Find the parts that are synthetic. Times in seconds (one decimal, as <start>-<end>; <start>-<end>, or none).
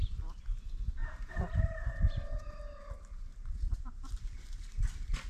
1.0-2.6; 3.3-4.5